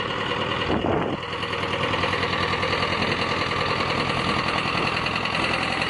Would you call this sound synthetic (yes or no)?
no